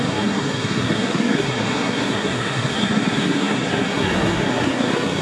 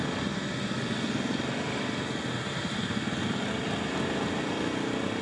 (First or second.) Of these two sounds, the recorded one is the second